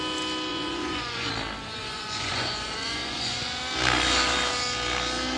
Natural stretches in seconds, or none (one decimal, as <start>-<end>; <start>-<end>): 0.0-0.5; 1.3-1.8; 3.6-5.4